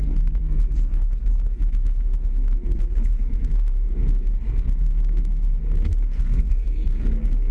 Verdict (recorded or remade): remade